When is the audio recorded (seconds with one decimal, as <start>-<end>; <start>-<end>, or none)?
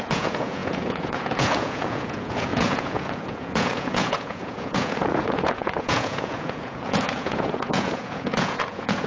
none